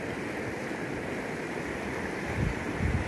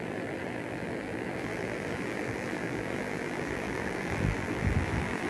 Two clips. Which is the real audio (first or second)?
first